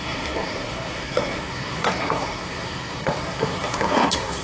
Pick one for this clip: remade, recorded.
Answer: remade